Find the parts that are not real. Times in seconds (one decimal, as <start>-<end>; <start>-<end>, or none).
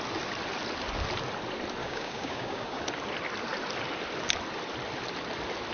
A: 1.8-2.8